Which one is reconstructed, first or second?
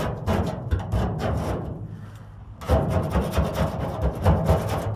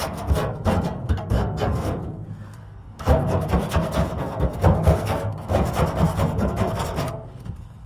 second